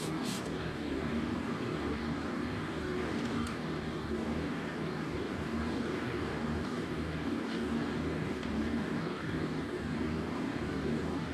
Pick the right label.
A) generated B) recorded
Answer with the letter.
A